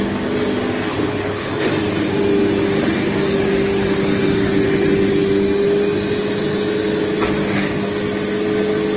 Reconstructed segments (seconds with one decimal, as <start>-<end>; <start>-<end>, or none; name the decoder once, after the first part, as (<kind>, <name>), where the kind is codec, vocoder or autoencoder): 0.9-1.5 (codec, HILCodec)